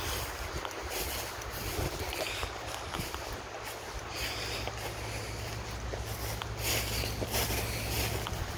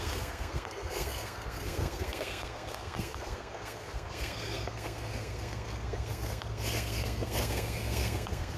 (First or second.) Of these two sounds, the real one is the first